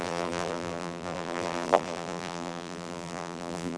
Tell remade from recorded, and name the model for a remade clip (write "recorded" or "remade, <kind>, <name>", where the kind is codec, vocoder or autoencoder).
remade, vocoder, BigVGAN v2